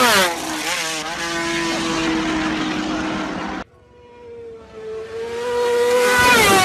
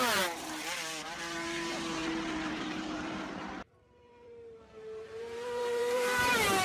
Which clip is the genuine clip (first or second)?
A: first